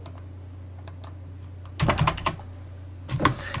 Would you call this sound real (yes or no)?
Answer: yes